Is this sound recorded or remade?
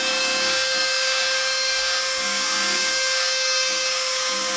remade